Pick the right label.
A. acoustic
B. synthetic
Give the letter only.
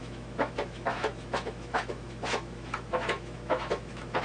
B